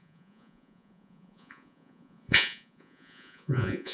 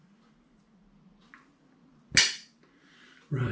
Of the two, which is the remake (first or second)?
first